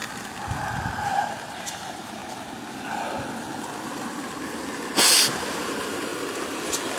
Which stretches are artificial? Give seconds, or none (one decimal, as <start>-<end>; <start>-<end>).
1.0-2.2; 5.2-6.1